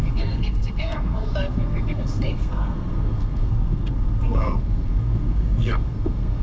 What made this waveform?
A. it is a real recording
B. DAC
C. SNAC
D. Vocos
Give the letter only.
C